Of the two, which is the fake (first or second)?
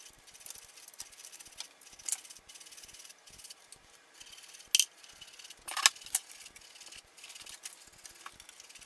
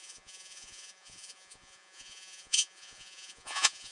second